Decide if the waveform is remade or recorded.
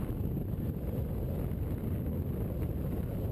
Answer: recorded